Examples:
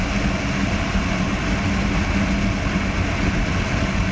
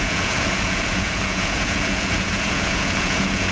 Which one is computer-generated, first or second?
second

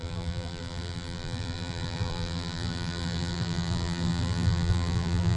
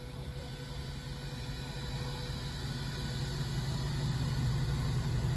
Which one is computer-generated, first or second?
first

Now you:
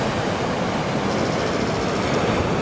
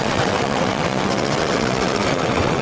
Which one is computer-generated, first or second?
second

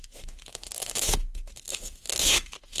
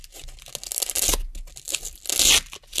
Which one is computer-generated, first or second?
first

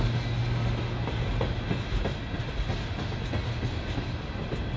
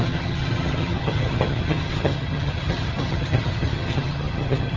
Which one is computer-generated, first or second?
second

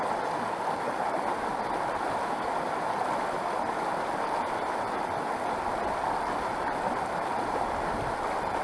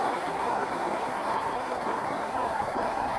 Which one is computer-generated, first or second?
second